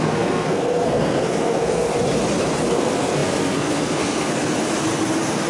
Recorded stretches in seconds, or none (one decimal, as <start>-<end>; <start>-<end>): 1.9-2.7; 4.4-5.5